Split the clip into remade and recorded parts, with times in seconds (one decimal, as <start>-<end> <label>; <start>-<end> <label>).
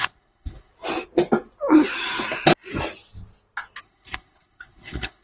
0.0-0.7 remade; 0.7-3.8 recorded; 3.8-5.2 remade